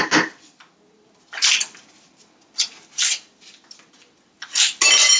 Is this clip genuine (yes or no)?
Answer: yes